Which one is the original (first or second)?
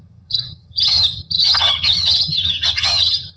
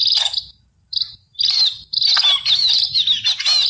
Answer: second